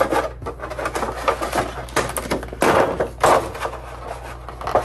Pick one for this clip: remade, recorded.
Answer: recorded